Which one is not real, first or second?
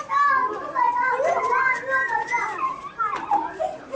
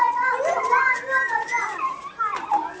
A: first